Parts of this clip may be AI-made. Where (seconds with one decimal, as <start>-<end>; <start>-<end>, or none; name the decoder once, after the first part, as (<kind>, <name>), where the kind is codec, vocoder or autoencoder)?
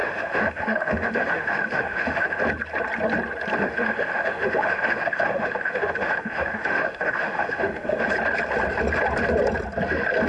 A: 0.0-2.4 (autoencoder, DAC-VAE); 3.6-8.1